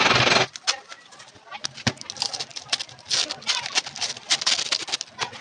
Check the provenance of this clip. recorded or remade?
recorded